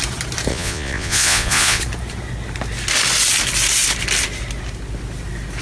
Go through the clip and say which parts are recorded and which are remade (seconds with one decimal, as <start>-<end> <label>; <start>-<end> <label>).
0.0-0.5 recorded; 0.5-1.8 remade; 1.8-5.6 recorded